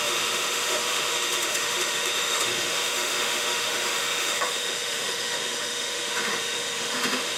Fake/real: fake